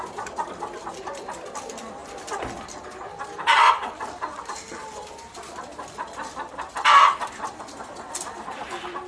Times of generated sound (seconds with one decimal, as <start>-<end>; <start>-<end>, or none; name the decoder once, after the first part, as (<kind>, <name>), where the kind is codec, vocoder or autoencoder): 0.0-1.1 (vocoder, BigVGAN v2); 1.6-9.1